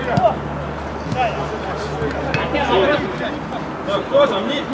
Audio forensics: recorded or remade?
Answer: recorded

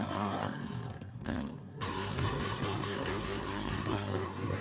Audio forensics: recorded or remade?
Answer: remade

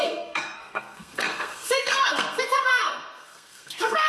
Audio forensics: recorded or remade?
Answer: remade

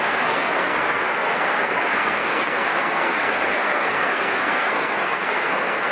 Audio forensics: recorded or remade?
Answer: remade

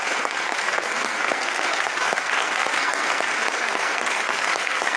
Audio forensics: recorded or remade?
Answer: remade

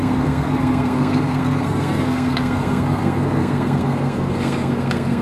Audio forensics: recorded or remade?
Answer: remade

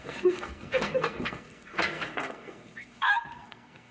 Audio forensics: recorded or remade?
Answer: remade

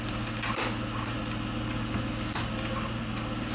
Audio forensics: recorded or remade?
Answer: recorded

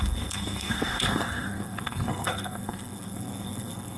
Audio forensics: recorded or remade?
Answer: remade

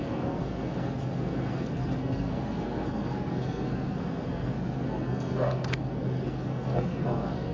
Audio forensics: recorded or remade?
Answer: remade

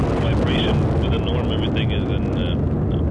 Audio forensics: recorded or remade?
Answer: recorded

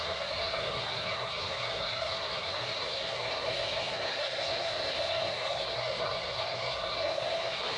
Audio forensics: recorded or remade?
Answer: remade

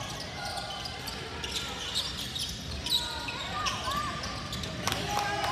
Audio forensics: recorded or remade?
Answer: recorded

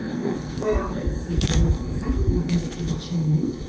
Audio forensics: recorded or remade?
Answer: remade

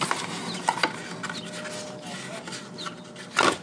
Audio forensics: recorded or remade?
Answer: recorded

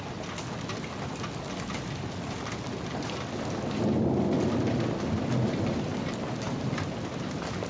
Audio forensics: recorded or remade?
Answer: recorded